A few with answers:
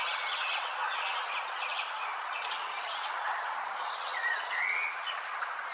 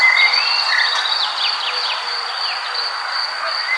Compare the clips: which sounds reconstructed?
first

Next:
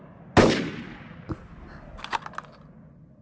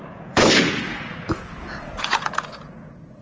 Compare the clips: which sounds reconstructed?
second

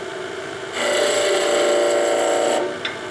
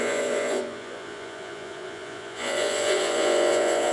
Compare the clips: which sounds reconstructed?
second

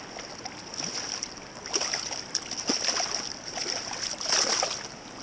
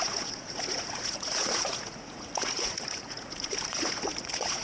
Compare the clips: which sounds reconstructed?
second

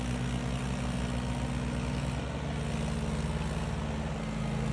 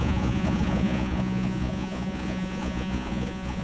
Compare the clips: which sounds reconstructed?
second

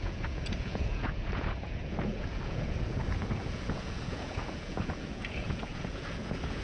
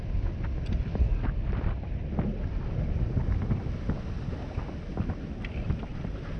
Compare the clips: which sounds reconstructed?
first